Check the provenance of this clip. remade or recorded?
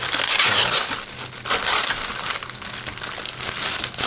recorded